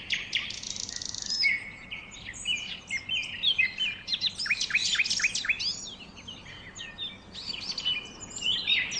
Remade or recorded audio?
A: recorded